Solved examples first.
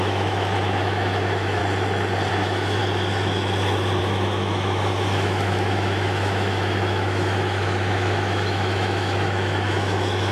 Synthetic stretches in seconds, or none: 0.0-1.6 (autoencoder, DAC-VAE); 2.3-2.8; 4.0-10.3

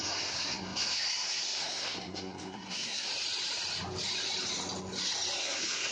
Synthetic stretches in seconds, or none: 0.0-3.1 (codec, SNAC); 5.4-5.9

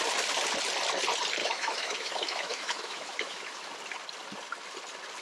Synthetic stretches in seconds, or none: 1.4-3.7 (autoencoder, DAC-VAE)

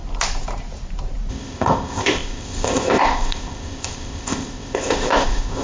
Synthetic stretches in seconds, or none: 1.3-5.6 (codec, ZipCodec)

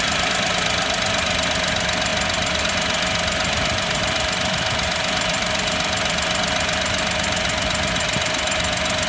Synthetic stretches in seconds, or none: 0.0-2.1 (vocoder, BigVGAN v2); 2.6-9.1

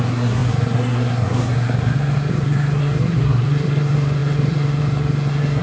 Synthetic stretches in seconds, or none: 0.0-5.6 (codec, SNAC)